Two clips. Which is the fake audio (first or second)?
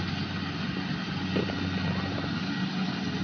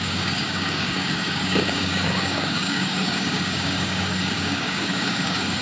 second